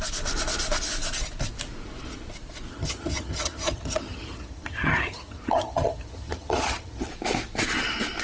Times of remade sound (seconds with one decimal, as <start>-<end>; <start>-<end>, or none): 2.7-7.1